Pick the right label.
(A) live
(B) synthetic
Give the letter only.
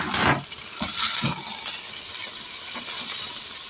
A